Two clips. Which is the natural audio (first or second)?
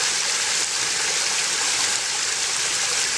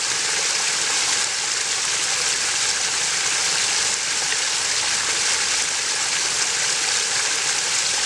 second